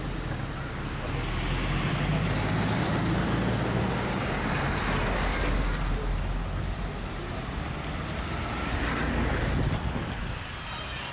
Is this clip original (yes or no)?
yes